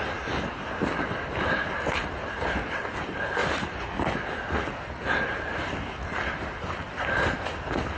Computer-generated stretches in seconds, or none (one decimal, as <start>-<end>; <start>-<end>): none